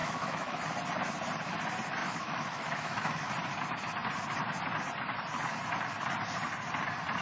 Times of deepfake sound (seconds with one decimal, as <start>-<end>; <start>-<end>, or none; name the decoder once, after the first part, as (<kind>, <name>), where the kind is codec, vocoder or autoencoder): 0.0-0.6 (autoencoder, DAC-VAE); 2.0-3.3